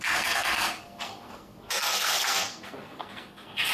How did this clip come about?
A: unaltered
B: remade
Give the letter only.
B